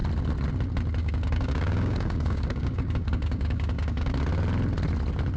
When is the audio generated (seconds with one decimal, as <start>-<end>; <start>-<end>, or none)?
1.0-4.2